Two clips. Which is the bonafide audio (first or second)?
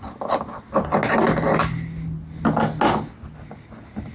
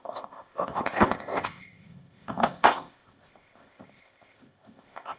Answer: first